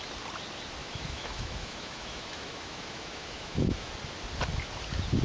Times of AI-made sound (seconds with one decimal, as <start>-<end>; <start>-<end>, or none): 0.8-3.9